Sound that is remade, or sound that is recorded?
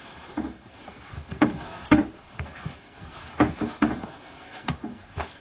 remade